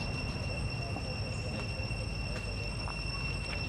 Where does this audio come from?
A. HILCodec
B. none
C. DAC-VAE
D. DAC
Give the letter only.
B